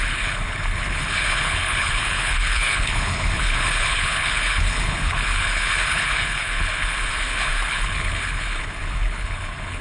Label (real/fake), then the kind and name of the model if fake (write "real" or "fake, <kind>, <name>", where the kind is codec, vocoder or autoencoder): fake, codec, HILCodec